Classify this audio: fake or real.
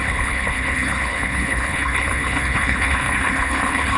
fake